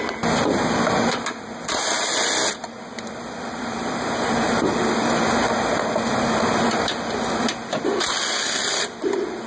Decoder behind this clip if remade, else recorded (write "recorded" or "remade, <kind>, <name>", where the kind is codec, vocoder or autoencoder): recorded